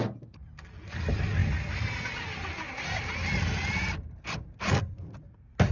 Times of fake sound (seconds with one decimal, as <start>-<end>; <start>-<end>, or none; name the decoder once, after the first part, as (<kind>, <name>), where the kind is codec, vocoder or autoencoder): none